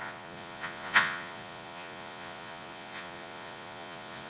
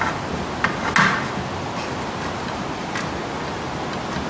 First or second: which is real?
second